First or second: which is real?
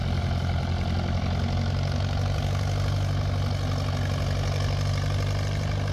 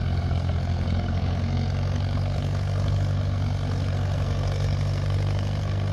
first